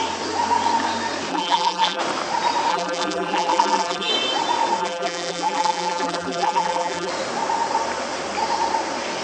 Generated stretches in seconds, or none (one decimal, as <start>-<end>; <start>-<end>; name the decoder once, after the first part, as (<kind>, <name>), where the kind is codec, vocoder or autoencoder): 1.3-2.0 (vocoder, BigVGAN v2); 2.7-4.1; 4.8-7.1